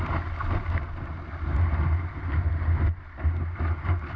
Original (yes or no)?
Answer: yes